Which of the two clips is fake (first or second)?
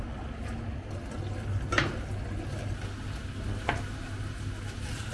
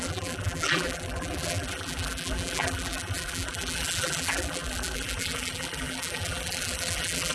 second